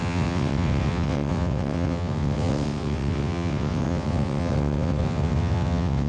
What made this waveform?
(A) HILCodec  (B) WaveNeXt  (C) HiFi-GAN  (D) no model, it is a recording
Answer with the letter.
B